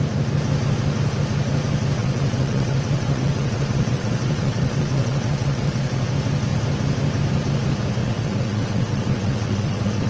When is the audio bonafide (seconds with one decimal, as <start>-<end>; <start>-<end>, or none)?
0.0-2.0; 6.1-8.0